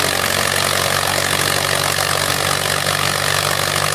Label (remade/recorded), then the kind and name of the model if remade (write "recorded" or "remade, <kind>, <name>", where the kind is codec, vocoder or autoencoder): recorded